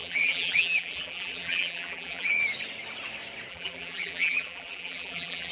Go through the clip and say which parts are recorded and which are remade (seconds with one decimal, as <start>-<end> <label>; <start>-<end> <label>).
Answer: 0.0-2.3 remade; 2.3-3.5 recorded; 3.5-5.5 remade